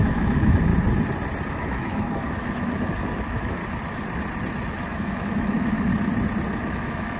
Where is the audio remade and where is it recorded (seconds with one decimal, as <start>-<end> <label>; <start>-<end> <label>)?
0.0-0.7 remade; 0.7-1.5 recorded; 1.5-3.6 remade; 3.6-4.7 recorded; 4.7-5.9 remade; 5.9-6.6 recorded; 6.6-7.2 remade